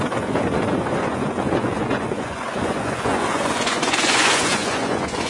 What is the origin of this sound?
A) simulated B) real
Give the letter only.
A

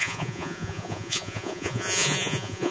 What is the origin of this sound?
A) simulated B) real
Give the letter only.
A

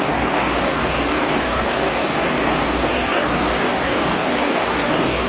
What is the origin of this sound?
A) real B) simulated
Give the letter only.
B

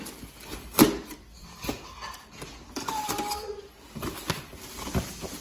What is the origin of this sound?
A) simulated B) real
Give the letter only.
B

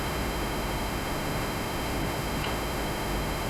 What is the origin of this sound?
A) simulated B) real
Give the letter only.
A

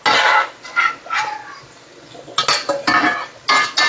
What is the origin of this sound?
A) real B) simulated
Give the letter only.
A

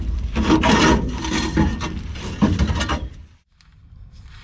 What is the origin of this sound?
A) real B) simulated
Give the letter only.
B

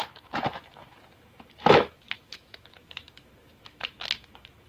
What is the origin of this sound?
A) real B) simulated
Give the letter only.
B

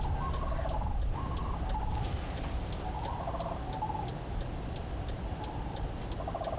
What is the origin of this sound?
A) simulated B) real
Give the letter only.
B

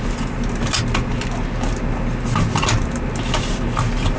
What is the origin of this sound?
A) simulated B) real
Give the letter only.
B